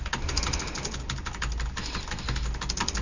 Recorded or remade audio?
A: recorded